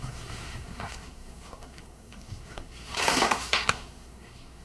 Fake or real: fake